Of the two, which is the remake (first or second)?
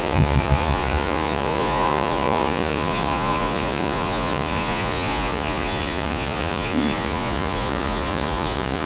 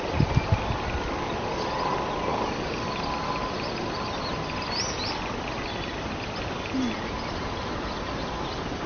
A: first